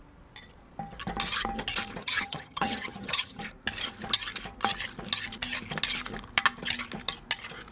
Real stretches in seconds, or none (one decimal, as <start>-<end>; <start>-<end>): 0.0-2.0; 3.4-7.7